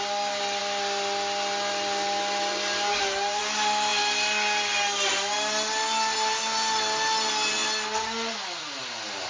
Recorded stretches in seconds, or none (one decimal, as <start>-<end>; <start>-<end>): 0.0-9.3

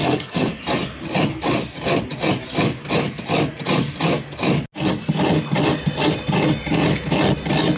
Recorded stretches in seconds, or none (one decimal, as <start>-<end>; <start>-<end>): 0.6-7.8

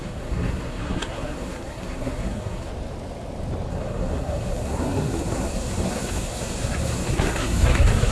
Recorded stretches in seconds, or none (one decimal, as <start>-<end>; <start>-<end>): 2.7-3.7

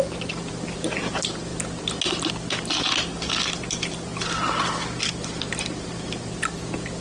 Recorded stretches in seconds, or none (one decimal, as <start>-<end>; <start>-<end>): 0.0-7.0

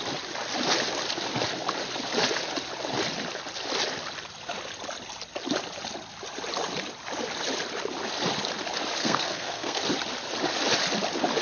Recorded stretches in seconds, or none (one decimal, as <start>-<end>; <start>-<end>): 0.0-9.0; 9.8-11.4

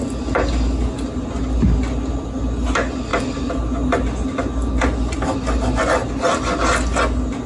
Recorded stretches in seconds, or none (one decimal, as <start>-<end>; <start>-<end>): 0.0-7.5